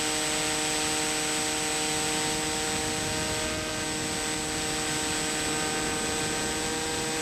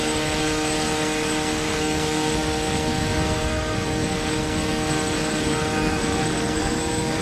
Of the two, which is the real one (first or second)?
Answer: first